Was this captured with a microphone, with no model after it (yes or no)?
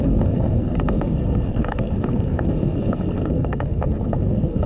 no